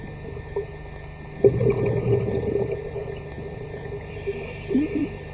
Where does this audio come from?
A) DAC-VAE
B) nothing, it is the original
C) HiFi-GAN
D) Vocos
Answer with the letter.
B